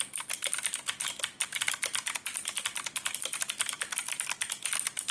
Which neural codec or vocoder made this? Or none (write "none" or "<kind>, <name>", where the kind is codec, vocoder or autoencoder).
none